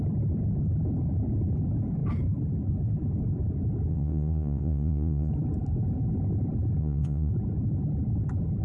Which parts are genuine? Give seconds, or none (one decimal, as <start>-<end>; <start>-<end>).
0.0-3.9; 5.3-6.8; 7.3-8.6